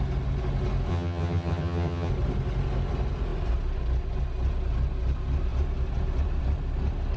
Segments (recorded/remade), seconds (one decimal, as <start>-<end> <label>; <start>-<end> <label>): 0.0-0.9 recorded; 0.9-2.1 remade; 2.1-7.2 recorded